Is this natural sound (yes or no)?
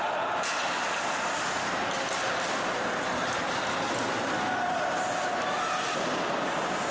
yes